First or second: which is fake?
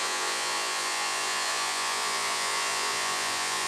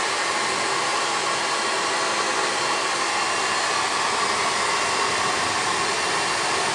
first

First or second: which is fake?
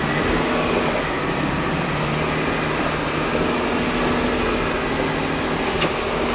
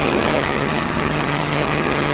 second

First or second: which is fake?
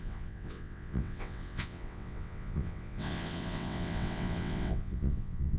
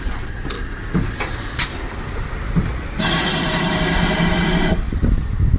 first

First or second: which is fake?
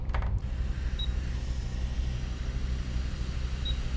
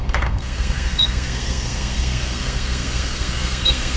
second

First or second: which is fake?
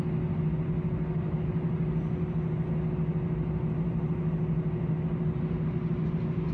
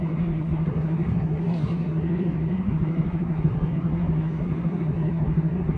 second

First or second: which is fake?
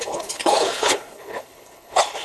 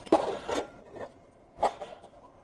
first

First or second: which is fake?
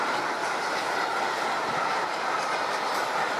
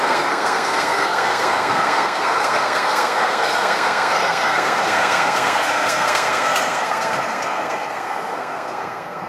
second